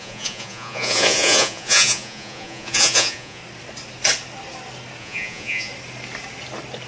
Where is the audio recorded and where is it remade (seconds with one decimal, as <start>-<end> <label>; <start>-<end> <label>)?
0.0-3.4 remade; 3.4-5.0 recorded; 5.0-5.7 remade; 5.7-6.9 recorded